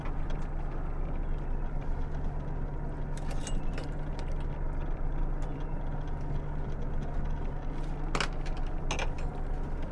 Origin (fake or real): real